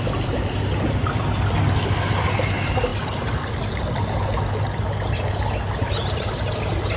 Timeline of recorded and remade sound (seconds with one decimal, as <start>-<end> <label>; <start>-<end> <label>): 0.0-7.0 recorded